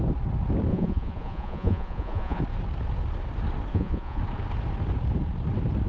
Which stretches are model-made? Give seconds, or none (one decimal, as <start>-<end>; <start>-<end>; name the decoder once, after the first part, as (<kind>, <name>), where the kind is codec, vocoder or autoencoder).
0.7-2.4 (vocoder, Vocos); 3.7-4.2